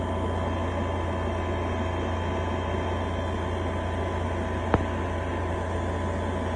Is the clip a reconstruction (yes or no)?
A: no